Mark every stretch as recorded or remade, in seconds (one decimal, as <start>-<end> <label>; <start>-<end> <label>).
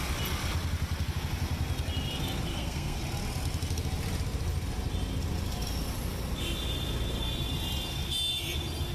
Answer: 0.0-2.5 recorded; 2.5-3.0 remade; 3.0-8.9 recorded